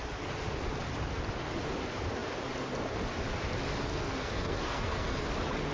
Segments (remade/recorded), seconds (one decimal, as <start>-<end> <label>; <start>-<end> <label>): 0.0-3.9 recorded; 3.9-5.3 remade; 5.3-5.7 recorded